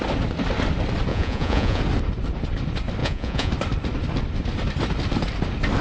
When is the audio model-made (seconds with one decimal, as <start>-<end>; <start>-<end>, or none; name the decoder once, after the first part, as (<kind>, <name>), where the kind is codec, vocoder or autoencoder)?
1.1-1.8 (vocoder, Vocos); 3.0-3.5